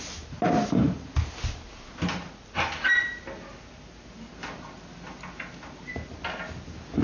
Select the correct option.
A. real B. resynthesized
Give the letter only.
A